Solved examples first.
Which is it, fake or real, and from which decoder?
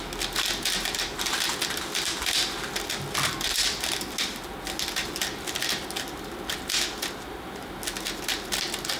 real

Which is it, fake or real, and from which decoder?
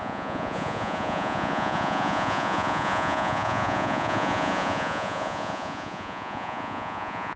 fake, vocoder, Vocos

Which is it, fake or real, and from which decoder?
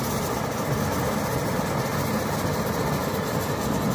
real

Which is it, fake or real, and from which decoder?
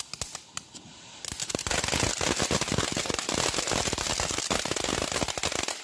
real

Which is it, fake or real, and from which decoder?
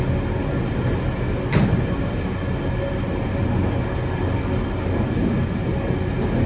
real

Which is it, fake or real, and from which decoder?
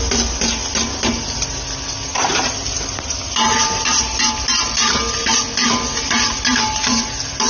real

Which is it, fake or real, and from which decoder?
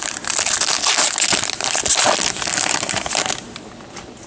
real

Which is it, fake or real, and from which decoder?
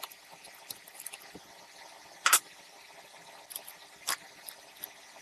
real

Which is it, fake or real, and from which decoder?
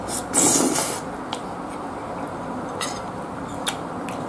real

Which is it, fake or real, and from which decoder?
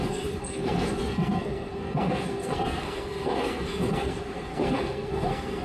fake, codec, SNAC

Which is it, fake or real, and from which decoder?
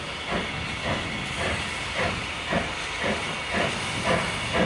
real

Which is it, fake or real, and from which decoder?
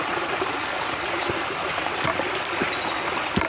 real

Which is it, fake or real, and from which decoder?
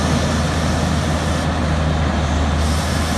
real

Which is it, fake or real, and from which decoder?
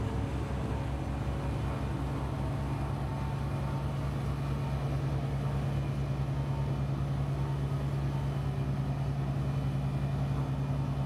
real